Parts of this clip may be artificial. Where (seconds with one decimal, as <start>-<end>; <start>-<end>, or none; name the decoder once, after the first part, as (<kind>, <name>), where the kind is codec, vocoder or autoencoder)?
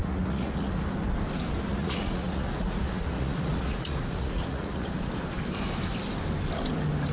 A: 0.0-0.7 (vocoder, Vocos); 1.7-5.1